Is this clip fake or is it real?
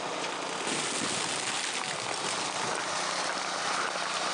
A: real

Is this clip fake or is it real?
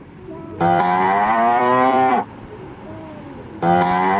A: fake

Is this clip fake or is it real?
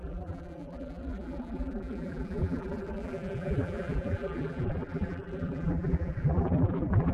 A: fake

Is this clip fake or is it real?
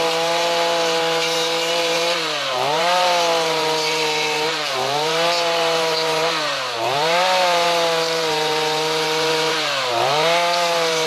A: fake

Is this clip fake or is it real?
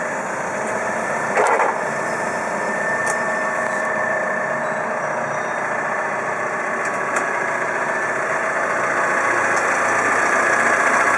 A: real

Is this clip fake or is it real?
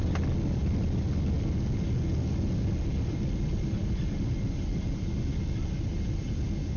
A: real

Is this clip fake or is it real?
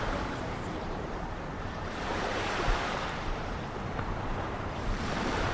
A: fake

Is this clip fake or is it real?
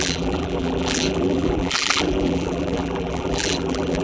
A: fake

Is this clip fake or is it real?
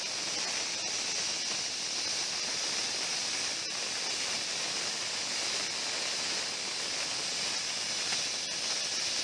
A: real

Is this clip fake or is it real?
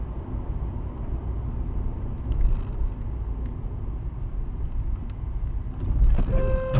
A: real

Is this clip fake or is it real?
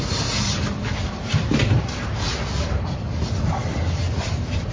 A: real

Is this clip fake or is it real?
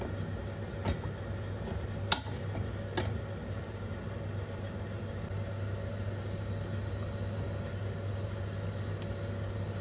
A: real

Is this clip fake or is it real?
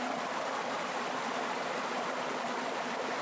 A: fake